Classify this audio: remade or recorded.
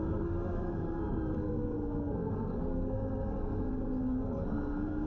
remade